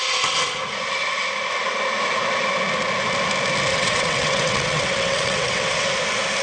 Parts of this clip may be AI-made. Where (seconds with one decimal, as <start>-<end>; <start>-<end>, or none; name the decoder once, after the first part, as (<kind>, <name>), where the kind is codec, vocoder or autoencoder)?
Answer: 3.7-5.9 (vocoder, WaveNeXt)